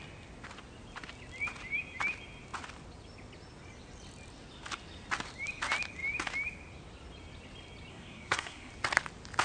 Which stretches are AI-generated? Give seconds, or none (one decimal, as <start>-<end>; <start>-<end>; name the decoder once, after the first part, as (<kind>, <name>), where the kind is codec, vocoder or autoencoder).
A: 7.9-8.7 (codec, SNAC)